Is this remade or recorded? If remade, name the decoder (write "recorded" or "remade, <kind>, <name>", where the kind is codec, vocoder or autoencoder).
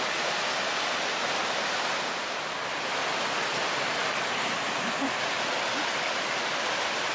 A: recorded